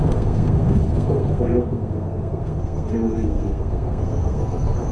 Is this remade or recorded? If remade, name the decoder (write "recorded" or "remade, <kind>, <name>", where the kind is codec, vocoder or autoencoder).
remade, codec, SNAC